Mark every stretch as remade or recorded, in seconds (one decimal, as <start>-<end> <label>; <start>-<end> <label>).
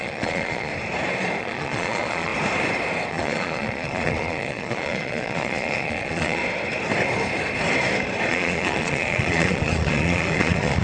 0.0-0.7 remade; 0.7-1.4 recorded; 1.4-2.3 remade; 2.3-3.1 recorded; 3.1-6.4 remade; 6.4-8.3 recorded; 8.3-10.8 remade